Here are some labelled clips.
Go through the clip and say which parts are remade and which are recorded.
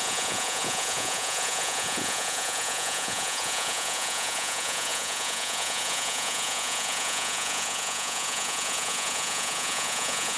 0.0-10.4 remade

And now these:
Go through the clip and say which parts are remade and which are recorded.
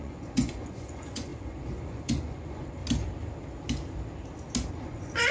0.0-2.8 remade; 2.8-4.7 recorded; 4.7-5.3 remade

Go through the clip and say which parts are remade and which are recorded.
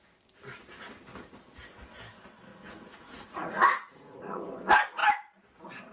0.0-2.5 recorded; 2.5-4.4 remade; 4.4-5.9 recorded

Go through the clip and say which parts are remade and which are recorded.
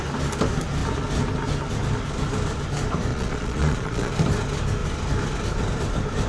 0.0-3.1 recorded; 3.1-4.1 remade; 4.1-6.3 recorded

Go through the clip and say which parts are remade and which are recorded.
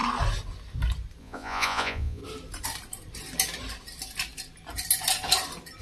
0.0-1.2 recorded; 1.2-2.2 remade; 2.2-5.8 recorded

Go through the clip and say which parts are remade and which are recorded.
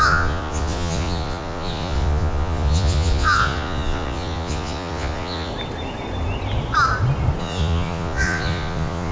0.0-5.5 remade; 5.5-7.4 recorded; 7.4-9.1 remade